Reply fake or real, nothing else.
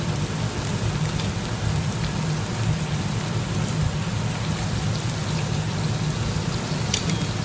real